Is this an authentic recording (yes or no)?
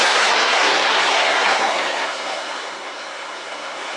no